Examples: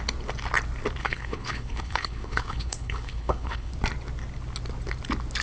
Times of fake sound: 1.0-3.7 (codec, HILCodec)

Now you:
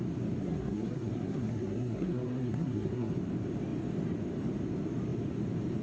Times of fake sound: 0.4-3.1 (codec, SNAC)

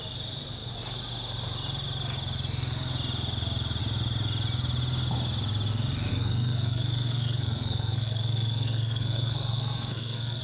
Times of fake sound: 6.1-10.4 (codec, SNAC)

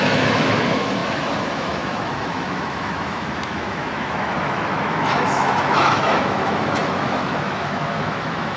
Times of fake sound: 0.0-8.6 (autoencoder, DAC-VAE)

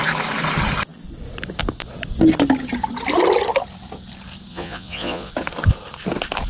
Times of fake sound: 4.5-5.3 (vocoder, Vocos)

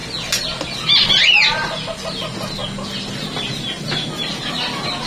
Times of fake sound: none

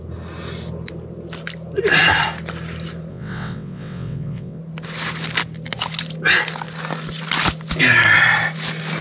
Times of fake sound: 3.1-4.6 (vocoder, WaveNeXt)